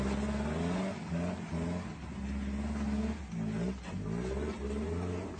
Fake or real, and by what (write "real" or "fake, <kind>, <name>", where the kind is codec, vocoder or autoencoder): real